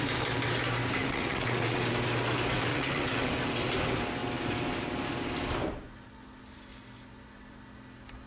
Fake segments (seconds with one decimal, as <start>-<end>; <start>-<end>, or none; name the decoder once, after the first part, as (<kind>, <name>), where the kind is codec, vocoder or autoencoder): 1.0-1.8 (vocoder, WaveNeXt); 2.7-3.3